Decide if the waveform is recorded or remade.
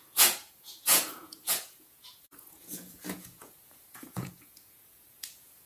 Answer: remade